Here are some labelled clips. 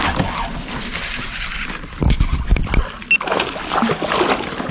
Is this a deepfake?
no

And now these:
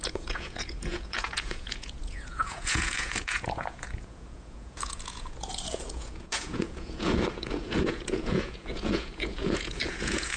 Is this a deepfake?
yes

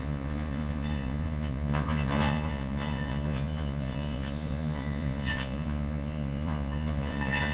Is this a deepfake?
yes